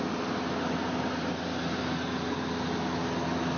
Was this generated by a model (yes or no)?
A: no